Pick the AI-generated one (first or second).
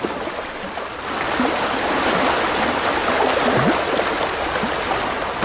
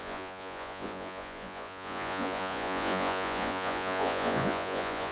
second